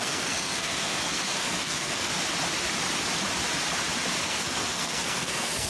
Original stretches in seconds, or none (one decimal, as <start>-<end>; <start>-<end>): 2.1-4.2